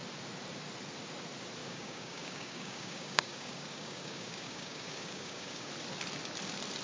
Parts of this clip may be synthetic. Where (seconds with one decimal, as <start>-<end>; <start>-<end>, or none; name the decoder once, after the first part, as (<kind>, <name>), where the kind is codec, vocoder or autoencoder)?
1.6-5.7 (codec, DAC)